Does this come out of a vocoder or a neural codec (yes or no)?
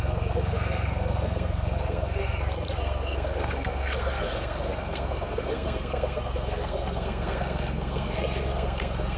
yes